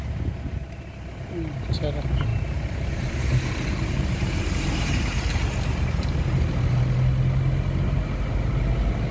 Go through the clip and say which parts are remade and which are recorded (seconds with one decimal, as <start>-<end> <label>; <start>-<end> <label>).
0.0-2.3 recorded; 2.3-6.4 remade; 6.4-9.1 recorded